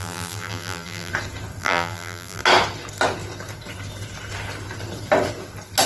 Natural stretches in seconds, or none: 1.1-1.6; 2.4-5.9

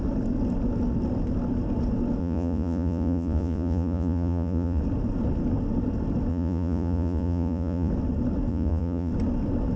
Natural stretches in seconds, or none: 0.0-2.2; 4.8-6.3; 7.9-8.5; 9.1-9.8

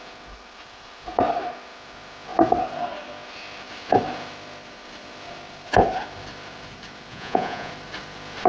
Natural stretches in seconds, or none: 0.0-7.1; 7.7-8.5

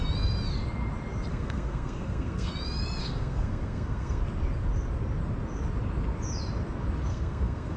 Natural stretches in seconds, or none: 0.0-1.3; 2.5-3.0; 4.2-7.1

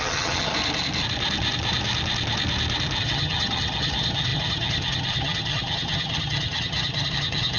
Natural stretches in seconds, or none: 0.5-3.0

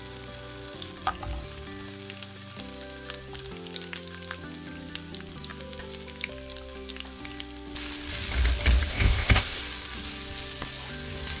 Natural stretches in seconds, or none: 0.0-8.9; 9.6-11.4

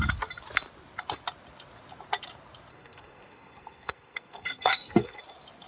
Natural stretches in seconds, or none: 0.0-2.7; 5.2-5.7

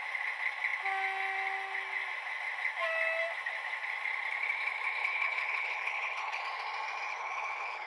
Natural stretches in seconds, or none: 0.0-5.0; 6.4-7.1